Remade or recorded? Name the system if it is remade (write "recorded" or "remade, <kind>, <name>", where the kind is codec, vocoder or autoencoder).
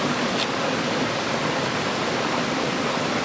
recorded